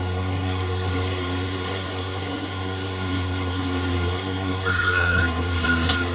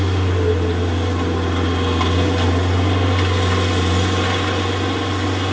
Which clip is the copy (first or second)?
first